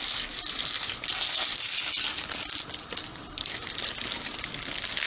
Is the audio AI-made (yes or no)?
no